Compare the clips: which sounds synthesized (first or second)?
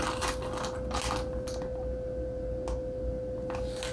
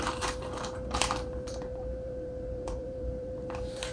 second